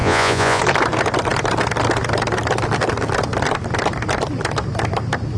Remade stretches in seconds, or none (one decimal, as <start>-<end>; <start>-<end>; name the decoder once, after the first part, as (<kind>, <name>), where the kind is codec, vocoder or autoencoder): 0.0-0.6 (vocoder, Vocos)